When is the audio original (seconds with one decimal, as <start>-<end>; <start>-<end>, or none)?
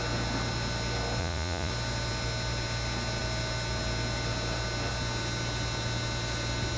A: 0.0-1.2; 1.7-6.8